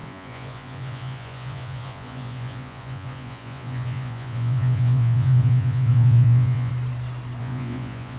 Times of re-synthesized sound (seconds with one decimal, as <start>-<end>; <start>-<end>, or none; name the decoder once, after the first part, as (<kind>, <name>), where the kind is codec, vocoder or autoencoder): 0.0-6.7 (vocoder, Vocos); 7.4-8.2